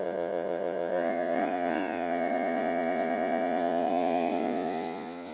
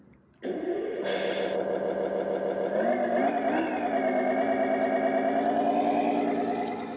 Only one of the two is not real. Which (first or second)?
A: first